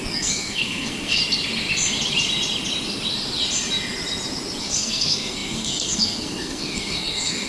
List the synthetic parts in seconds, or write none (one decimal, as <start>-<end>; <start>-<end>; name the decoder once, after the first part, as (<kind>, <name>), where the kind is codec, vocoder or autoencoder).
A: 0.0-1.2 (codec, SNAC); 4.6-7.5